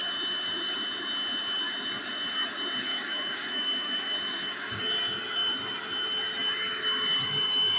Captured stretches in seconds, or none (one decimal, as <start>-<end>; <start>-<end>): 0.0-2.9; 4.8-7.8